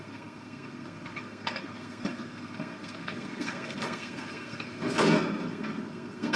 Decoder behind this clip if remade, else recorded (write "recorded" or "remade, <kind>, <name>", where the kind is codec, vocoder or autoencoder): remade, codec, SNAC